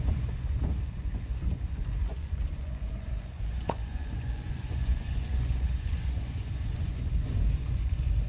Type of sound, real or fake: fake